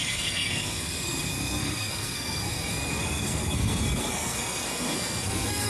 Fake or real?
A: fake